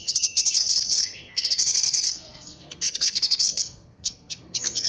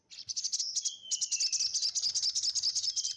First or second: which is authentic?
second